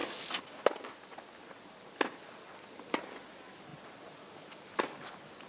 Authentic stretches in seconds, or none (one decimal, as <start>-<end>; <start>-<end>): 0.0-5.5